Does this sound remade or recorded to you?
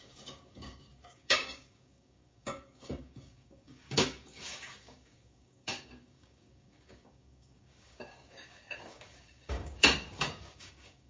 remade